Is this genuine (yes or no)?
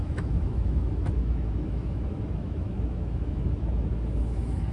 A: no